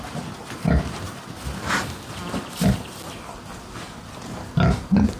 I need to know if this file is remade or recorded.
recorded